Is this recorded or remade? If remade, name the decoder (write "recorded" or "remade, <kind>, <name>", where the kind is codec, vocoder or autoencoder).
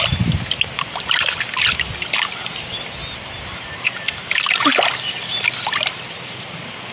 recorded